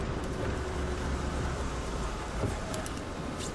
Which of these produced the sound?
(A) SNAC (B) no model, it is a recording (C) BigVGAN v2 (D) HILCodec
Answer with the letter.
C